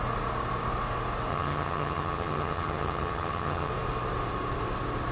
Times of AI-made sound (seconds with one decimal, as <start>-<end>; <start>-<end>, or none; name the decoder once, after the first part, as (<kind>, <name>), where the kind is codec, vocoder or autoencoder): 1.3-3.7 (vocoder, HiFi-GAN)